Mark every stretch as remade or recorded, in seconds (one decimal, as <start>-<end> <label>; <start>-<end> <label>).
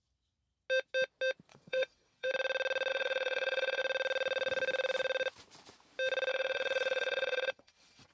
0.0-1.5 recorded; 1.5-2.3 remade; 2.3-2.9 recorded; 2.9-3.8 remade; 3.8-6.3 recorded; 6.3-8.1 remade